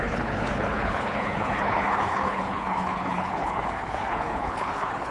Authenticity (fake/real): fake